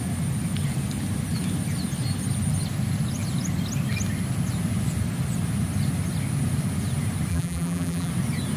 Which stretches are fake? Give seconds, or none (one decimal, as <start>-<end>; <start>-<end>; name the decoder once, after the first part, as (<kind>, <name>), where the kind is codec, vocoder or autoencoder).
7.3-8.1 (vocoder, BigVGAN v2)